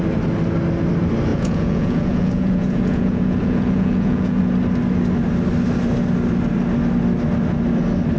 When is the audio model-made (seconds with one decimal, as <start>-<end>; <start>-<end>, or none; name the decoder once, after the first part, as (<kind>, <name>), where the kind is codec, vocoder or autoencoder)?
1.3-4.4 (vocoder, Vocos)